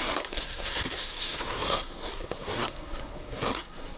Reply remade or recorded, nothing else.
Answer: remade